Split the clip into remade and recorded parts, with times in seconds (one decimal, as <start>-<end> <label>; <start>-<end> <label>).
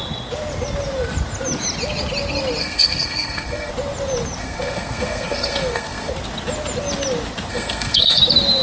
0.0-2.6 recorded; 2.6-3.7 remade; 3.7-4.4 recorded; 4.4-6.1 remade; 6.1-7.5 recorded; 7.5-8.2 remade; 8.2-8.6 recorded